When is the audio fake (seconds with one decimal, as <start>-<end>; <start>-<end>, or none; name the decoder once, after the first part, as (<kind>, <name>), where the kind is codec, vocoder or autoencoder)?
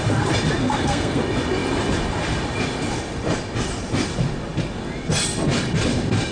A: 0.6-1.2 (codec, SNAC)